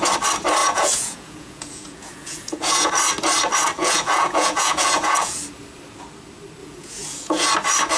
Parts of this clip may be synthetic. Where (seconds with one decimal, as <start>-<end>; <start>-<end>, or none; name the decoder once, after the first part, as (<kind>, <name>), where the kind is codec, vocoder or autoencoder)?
0.6-2.9 (vocoder, Vocos); 3.8-5.4; 6.6-7.5